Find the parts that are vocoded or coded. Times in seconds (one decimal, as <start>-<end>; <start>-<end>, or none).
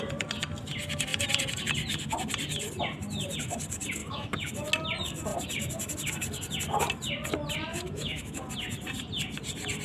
4.0-4.5; 7.7-8.4